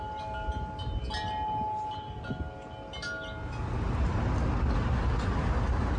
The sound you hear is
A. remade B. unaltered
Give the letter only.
B